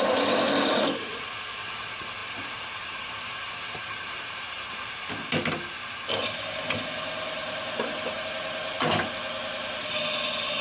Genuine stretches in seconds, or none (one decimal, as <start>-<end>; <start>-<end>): 0.0-2.2; 5.0-7.4; 8.2-10.6